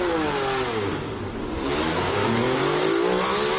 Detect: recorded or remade recorded